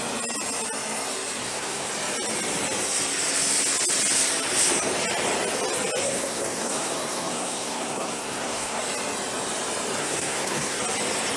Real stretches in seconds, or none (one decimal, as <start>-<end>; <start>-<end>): 0.0-1.4; 1.9-6.0; 8.8-10.0; 10.8-11.4